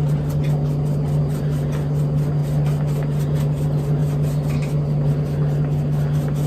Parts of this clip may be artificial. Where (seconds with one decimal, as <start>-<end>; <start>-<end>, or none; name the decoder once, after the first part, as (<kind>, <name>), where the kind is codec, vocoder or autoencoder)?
none